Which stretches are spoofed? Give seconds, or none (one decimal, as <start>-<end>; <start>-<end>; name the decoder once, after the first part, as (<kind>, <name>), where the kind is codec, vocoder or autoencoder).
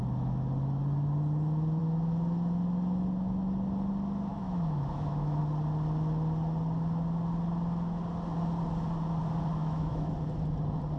4.3-5.4 (autoencoder, DAC-VAE); 9.6-10.1